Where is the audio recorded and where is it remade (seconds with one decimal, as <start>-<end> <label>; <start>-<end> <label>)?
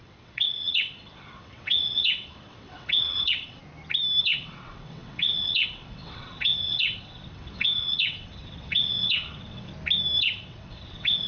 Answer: 0.0-3.6 remade; 3.6-4.2 recorded; 4.2-9.7 remade; 9.7-10.2 recorded; 10.2-11.3 remade